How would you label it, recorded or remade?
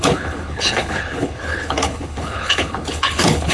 remade